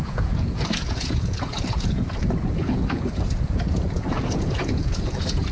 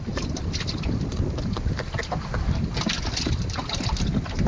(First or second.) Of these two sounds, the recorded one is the second